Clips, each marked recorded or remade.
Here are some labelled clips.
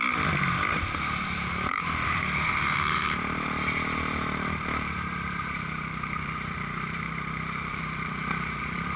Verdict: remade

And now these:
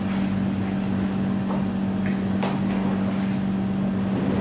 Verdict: recorded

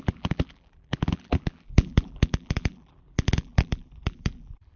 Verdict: remade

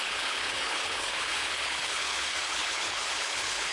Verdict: remade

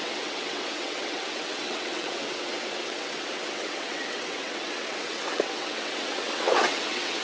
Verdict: remade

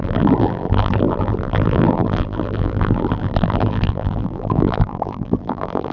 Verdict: remade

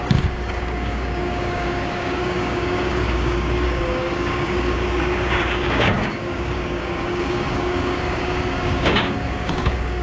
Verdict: remade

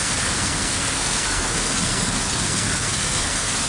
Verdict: remade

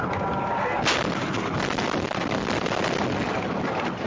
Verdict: recorded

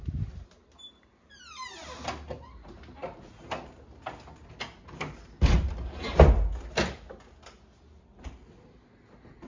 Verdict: recorded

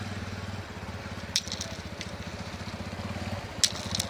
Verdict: recorded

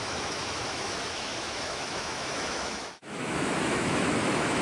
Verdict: remade